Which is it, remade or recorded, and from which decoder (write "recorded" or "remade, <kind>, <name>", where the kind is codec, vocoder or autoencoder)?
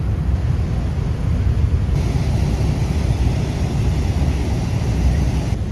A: recorded